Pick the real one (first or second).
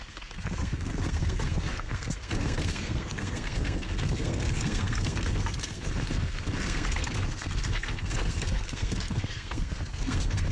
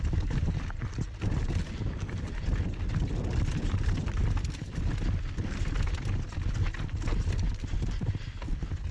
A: second